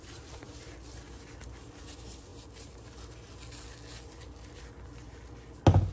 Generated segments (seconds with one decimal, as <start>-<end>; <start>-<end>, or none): none